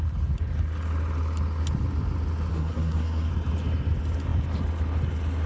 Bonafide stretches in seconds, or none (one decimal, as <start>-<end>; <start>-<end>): 0.0-2.5; 3.3-5.5